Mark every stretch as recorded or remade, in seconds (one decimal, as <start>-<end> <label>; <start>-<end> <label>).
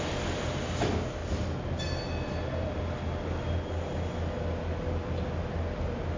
0.0-6.2 recorded